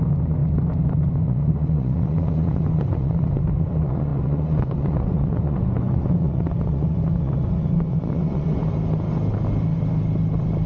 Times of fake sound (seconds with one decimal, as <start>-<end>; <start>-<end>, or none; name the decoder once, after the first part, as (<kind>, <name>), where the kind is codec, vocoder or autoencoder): 0.0-8.6 (vocoder, Vocos)